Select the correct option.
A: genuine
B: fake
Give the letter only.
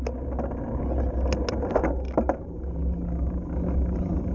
A